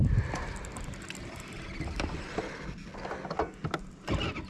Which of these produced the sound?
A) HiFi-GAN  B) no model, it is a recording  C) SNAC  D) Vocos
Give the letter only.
B